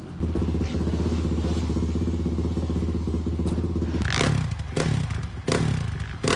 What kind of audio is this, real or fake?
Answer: real